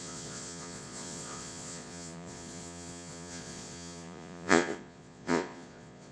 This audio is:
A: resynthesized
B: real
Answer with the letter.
A